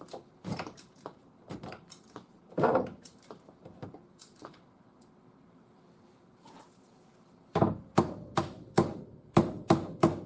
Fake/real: fake